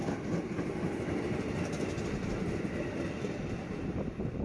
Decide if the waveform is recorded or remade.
recorded